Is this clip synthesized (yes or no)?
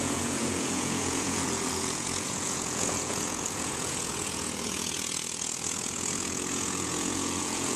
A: yes